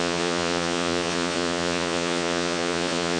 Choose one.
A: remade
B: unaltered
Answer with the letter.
A